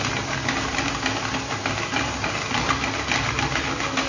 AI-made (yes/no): no